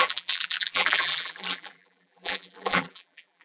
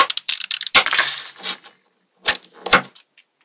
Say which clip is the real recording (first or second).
second